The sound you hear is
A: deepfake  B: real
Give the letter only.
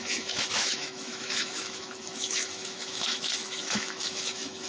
A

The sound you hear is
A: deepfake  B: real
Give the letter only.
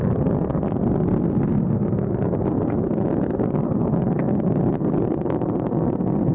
B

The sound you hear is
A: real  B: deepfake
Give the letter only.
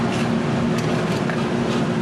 A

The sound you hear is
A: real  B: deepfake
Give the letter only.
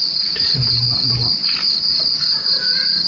B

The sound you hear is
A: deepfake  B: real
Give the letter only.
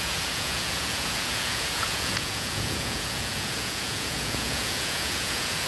A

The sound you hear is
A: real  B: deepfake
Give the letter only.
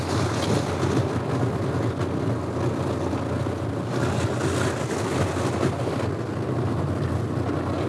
A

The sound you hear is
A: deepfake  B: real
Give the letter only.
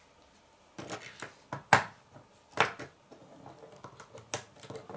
B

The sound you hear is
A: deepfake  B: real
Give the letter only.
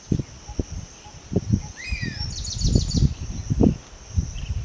B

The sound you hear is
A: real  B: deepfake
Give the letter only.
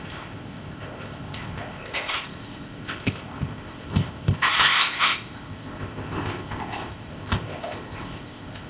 B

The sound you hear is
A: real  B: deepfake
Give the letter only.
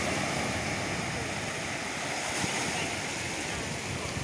A